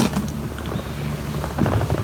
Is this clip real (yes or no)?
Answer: yes